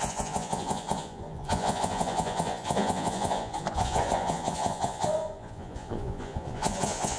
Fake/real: fake